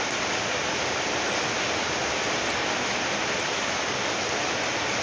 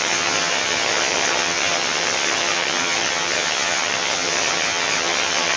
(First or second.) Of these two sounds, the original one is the first